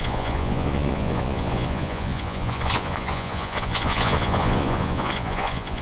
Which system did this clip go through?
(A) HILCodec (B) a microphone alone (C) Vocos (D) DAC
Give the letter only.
C